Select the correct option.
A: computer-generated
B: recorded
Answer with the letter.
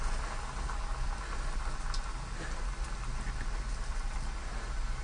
B